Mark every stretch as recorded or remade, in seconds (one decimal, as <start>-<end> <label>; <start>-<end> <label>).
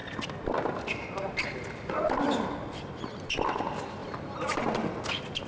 0.0-5.5 recorded